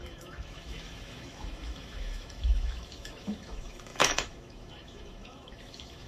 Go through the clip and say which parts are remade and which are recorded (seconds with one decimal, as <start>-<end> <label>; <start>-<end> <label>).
0.0-6.1 remade